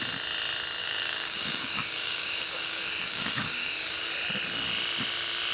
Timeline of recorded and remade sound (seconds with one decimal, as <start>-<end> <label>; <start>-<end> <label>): 0.0-0.8 recorded; 0.8-4.1 remade; 4.1-5.5 recorded